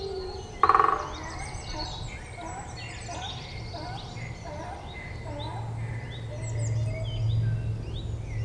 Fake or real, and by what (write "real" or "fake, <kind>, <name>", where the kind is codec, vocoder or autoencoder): real